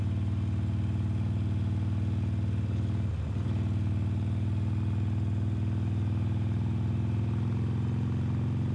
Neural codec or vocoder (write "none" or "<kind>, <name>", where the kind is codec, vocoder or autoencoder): none